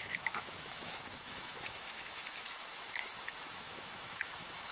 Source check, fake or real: fake